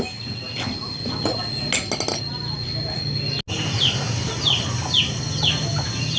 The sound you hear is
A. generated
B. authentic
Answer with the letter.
B